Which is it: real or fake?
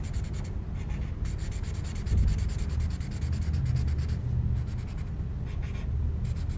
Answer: real